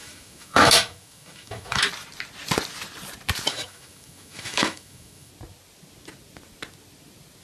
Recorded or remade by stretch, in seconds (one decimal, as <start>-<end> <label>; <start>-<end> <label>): 0.0-1.9 remade; 1.9-3.5 recorded; 3.5-5.3 remade; 5.3-7.4 recorded